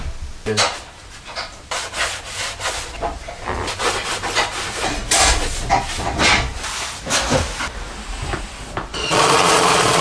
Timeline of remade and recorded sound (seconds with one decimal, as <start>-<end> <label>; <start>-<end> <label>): 0.0-8.9 recorded; 8.9-10.0 remade